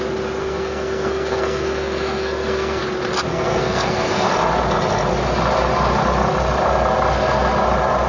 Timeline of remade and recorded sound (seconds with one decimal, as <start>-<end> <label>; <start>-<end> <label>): 0.0-0.4 recorded; 0.4-2.8 remade; 2.8-3.3 recorded; 3.3-4.3 remade; 4.3-8.1 recorded